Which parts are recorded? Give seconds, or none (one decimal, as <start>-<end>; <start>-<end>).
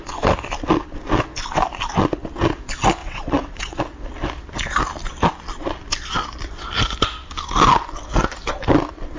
0.0-3.0; 3.8-9.2